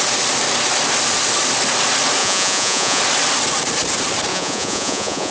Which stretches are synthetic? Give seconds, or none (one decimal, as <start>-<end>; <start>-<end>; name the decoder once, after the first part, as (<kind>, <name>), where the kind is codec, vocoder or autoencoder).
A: 2.2-3.0 (vocoder, Vocos); 4.3-5.3